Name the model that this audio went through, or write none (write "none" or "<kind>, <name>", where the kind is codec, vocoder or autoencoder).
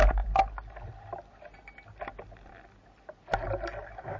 none